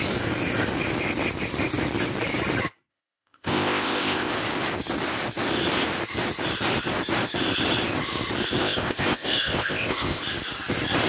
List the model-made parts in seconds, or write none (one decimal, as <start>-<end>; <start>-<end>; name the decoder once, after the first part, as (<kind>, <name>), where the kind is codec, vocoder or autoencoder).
2.9-4.3 (codec, ZipCodec); 8.6-10.2